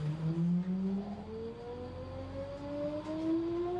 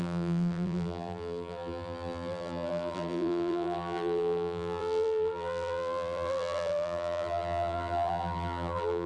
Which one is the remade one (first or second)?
second